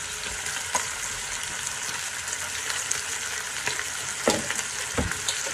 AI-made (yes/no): no